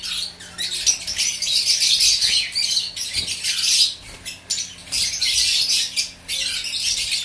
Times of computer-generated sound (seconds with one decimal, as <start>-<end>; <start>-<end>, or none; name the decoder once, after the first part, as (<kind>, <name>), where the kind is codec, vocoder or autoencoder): none

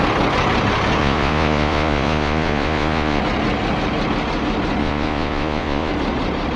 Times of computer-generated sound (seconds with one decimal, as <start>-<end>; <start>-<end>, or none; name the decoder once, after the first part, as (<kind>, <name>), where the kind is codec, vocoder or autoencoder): 1.0-3.2 (vocoder, Vocos); 4.8-5.9

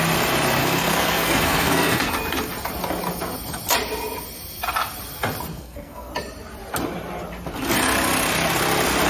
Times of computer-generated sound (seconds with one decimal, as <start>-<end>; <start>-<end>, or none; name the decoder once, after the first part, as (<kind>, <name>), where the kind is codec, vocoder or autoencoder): 0.6-2.1 (codec, SNAC); 5.5-6.1

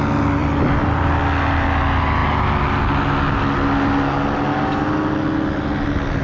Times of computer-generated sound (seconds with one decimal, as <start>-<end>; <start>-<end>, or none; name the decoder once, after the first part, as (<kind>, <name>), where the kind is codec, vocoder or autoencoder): 0.4-1.2 (vocoder, BigVGAN v2)